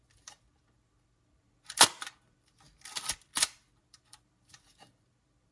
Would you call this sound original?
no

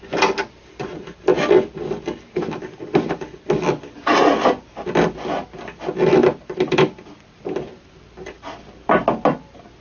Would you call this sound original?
yes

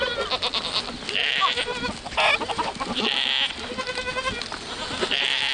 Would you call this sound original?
yes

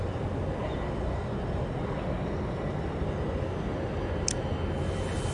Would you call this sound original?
yes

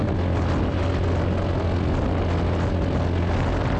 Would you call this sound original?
yes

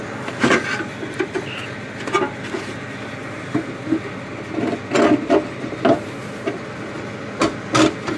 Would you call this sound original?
yes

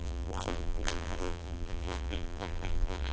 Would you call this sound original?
no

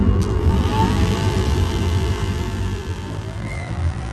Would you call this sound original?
no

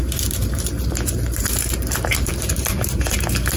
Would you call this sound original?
no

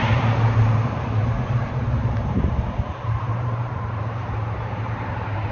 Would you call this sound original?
no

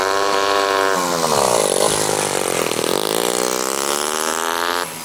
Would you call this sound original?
yes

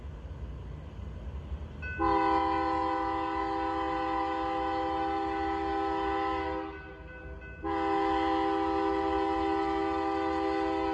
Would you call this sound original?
yes